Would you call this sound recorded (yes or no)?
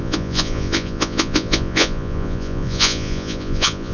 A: no